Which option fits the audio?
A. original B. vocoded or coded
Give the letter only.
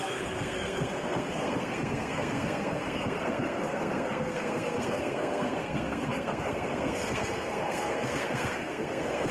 B